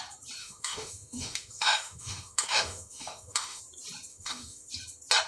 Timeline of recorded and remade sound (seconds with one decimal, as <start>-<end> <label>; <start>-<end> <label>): 0.0-0.4 recorded; 0.4-3.6 remade; 3.6-4.1 recorded; 4.1-4.7 remade; 4.7-5.3 recorded